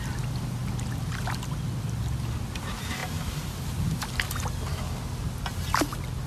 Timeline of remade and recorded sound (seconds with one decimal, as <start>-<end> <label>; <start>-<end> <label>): 0.0-6.3 recorded